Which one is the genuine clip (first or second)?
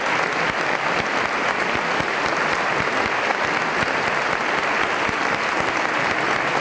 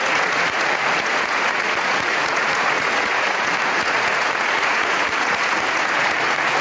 first